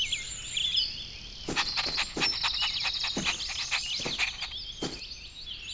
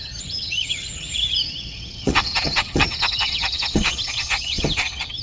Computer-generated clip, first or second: second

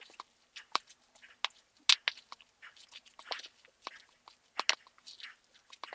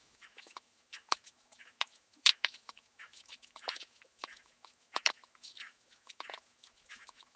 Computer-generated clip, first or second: second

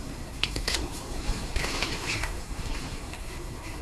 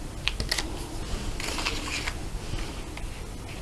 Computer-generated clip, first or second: first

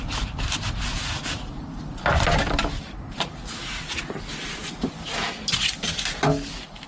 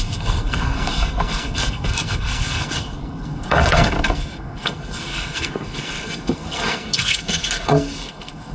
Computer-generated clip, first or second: second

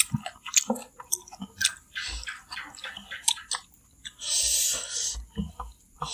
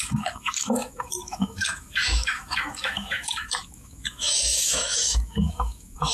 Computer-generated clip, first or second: second